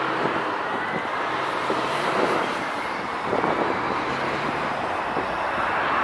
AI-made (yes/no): no